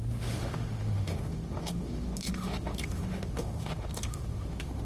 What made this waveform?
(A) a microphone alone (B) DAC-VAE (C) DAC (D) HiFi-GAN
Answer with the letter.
B